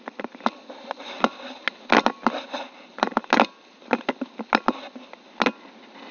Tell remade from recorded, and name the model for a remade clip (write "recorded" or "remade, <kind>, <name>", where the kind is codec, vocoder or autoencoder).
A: recorded